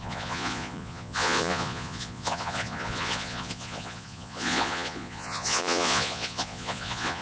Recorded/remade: remade